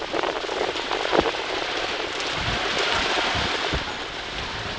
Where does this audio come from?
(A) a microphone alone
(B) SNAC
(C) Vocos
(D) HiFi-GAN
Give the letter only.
A